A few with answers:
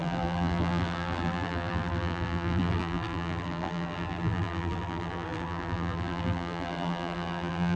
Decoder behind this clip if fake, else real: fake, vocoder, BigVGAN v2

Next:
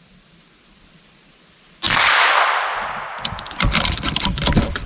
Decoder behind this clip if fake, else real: real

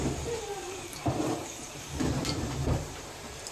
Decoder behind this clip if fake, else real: fake, vocoder, BigVGAN v2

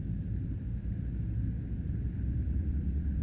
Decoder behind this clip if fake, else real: real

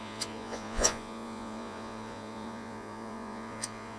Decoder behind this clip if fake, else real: fake, vocoder, Vocos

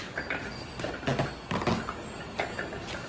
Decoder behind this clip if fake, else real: real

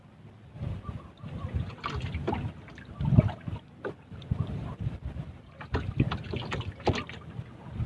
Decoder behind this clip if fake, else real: real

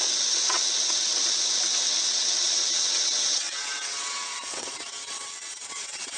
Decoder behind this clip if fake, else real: fake, vocoder, WaveNeXt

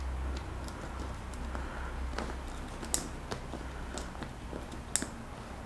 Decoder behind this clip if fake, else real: real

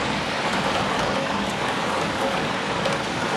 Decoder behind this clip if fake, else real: fake, codec, DAC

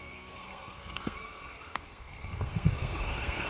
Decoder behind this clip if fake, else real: fake, codec, SNAC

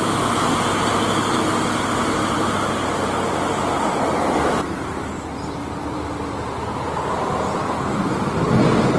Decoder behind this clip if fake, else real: real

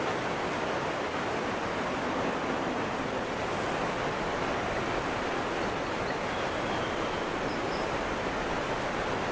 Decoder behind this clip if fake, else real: real